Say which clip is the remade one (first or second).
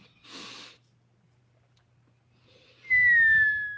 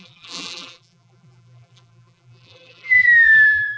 second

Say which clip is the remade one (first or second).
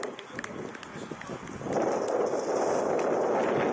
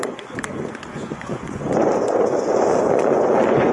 second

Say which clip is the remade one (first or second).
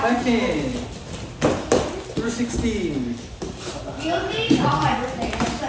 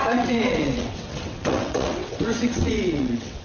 second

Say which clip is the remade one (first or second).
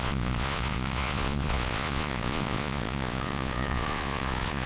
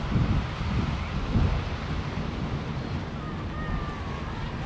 first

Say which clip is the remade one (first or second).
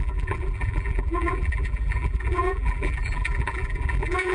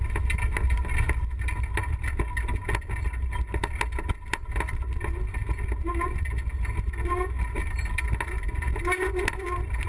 first